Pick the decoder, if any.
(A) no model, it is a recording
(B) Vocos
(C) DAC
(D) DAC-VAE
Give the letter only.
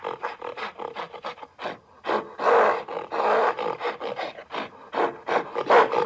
A